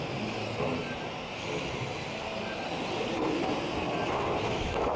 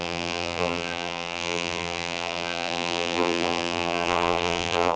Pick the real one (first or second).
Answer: first